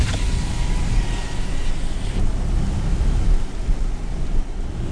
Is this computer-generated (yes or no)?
no